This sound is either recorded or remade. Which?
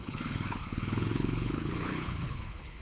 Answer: remade